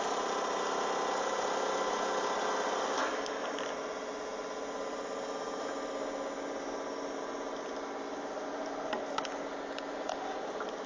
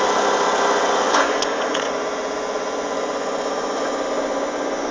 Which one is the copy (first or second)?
second